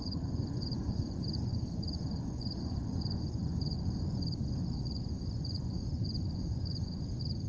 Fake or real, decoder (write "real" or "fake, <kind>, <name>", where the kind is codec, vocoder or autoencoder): fake, vocoder, Vocos